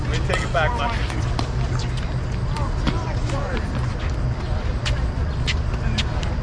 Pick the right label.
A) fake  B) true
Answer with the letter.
B